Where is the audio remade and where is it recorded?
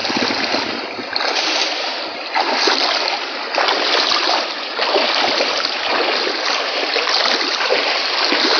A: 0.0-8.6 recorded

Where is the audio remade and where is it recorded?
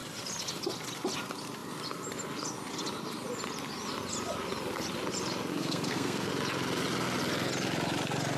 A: 0.0-5.5 recorded; 5.5-6.3 remade; 6.3-8.4 recorded